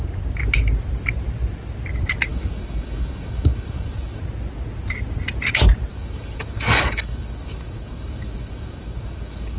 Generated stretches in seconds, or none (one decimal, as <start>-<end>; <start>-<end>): 2.3-4.2; 5.9-9.6